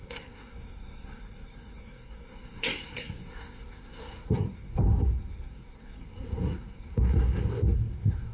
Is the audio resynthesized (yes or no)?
yes